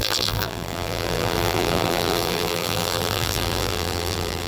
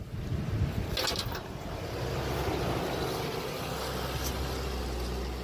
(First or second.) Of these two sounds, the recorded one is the second